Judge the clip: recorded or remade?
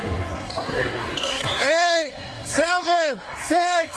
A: remade